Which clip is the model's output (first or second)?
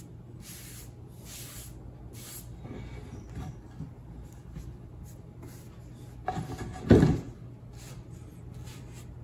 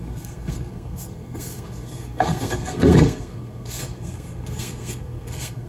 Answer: second